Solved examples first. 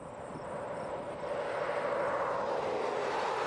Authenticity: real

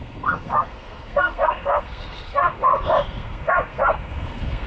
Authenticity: fake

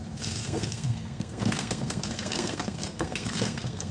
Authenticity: fake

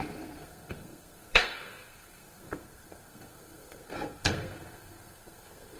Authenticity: fake